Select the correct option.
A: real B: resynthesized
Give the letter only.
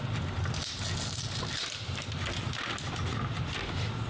A